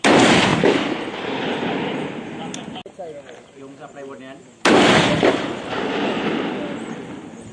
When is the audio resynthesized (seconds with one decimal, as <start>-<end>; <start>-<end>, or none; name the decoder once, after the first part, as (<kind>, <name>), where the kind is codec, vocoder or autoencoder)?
none